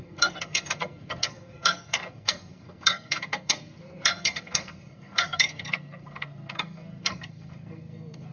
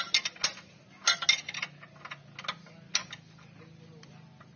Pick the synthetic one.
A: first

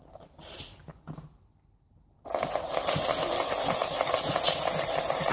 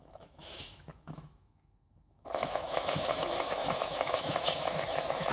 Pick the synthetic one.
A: second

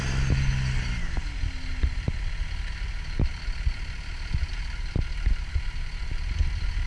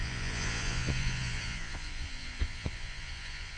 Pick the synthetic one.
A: second